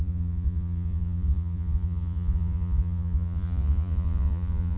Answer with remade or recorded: remade